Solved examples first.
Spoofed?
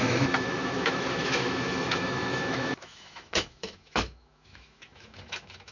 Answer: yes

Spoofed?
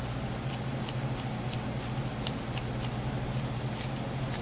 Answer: no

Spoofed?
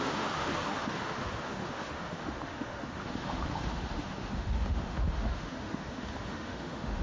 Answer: yes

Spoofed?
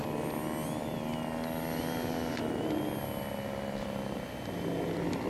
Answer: no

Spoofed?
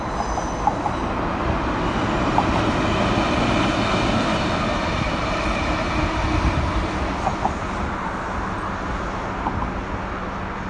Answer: no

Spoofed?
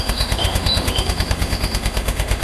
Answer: yes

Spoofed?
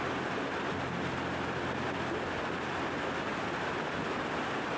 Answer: no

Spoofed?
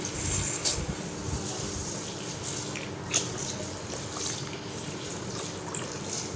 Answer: no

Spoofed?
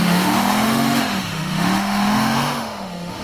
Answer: yes